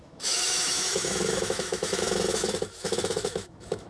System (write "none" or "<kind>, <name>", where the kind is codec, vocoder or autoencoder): autoencoder, DAC-VAE